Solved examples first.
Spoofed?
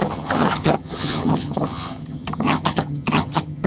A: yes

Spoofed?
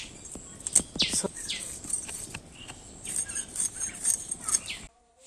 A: no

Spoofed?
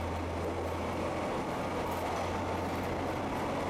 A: no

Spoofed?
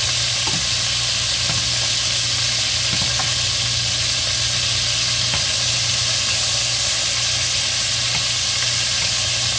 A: no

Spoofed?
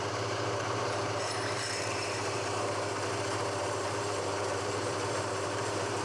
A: yes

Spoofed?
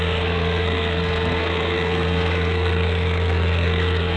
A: yes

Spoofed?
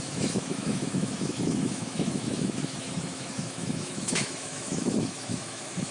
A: yes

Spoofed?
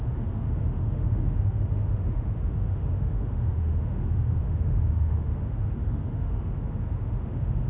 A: yes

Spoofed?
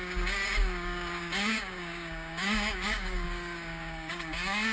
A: yes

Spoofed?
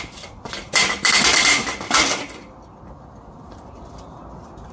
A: no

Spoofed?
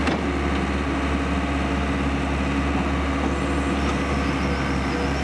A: no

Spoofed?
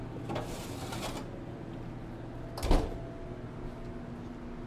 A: no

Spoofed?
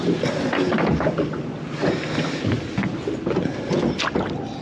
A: no